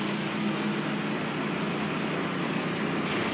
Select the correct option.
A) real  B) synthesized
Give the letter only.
A